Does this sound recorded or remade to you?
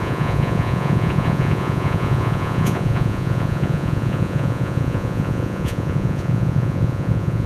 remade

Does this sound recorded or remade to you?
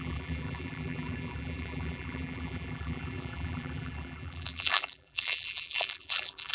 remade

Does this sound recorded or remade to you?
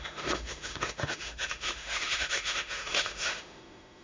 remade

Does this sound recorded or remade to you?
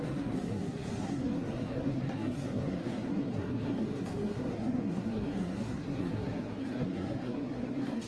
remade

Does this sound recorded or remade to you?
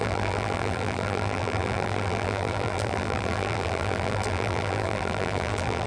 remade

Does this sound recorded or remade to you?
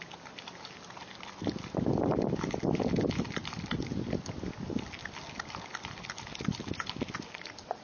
recorded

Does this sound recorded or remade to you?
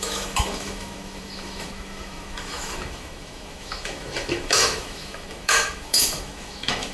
remade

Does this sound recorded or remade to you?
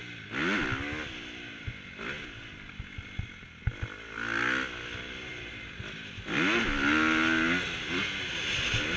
recorded